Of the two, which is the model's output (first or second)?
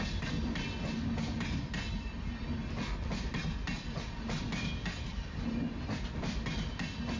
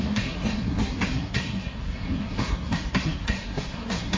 second